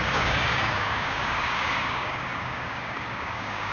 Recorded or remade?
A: remade